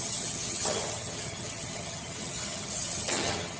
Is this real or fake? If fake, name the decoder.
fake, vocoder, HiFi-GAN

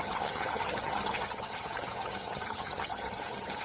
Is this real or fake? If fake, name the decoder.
fake, vocoder, HiFi-GAN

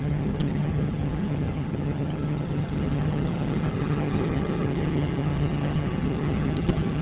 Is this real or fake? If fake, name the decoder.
fake, vocoder, HiFi-GAN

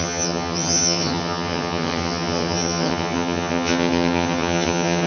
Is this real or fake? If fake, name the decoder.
fake, vocoder, HiFi-GAN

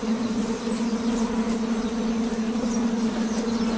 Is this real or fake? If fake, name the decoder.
real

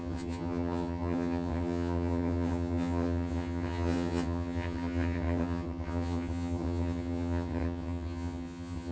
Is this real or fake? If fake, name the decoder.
fake, vocoder, HiFi-GAN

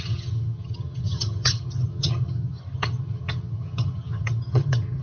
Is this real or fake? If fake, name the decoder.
fake, vocoder, HiFi-GAN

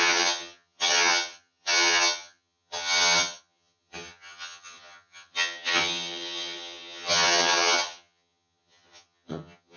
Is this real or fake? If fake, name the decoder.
fake, vocoder, HiFi-GAN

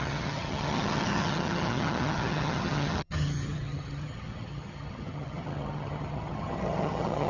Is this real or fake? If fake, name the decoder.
fake, vocoder, HiFi-GAN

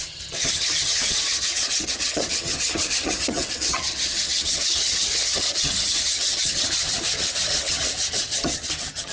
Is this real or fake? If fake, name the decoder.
fake, vocoder, HiFi-GAN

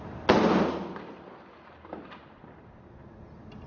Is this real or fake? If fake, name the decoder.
real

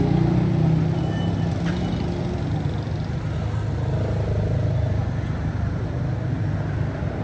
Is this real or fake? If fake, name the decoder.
real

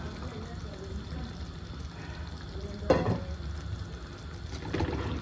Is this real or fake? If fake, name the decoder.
real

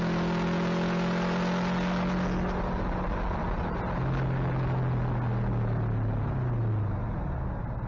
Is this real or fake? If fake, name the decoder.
real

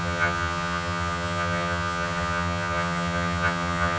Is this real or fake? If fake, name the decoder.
fake, vocoder, HiFi-GAN